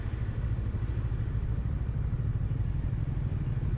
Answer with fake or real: real